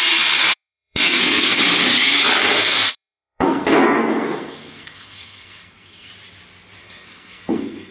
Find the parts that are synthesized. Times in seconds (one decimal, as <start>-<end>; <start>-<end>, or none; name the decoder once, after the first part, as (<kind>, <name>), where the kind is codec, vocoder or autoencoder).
0.4-1.6 (codec, SNAC); 2.4-6.1; 6.8-7.9